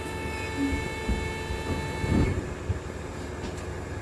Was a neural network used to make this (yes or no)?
no